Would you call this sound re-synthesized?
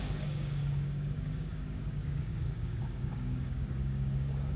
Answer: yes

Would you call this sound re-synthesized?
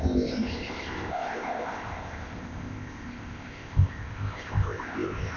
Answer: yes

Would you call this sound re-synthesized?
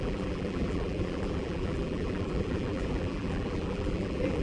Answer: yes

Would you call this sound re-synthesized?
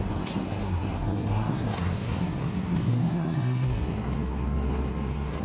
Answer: yes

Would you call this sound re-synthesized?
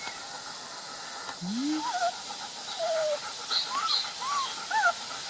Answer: no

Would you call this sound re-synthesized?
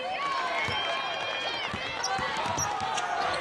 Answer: no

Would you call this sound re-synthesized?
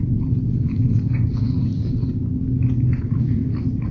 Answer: no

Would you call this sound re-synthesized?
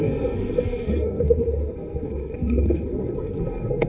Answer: yes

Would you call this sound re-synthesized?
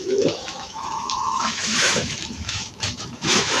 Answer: yes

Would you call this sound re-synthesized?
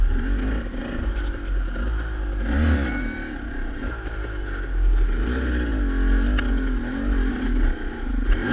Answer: no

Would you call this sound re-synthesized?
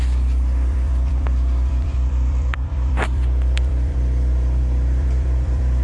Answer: yes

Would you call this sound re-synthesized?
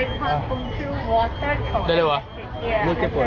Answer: no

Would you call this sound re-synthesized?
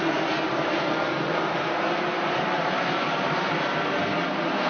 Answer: yes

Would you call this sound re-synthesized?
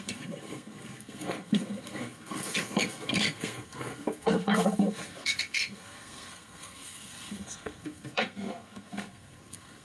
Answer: yes